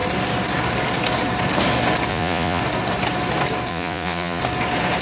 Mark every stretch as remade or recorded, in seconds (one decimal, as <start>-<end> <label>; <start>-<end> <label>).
0.0-2.1 recorded; 2.1-2.6 remade; 2.6-3.7 recorded; 3.7-4.4 remade; 4.4-5.0 recorded